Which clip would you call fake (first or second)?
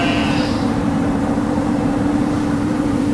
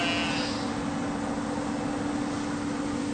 first